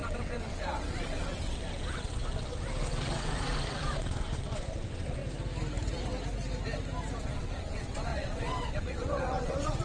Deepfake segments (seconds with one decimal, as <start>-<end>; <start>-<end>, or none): 0.0-5.2; 7.2-9.8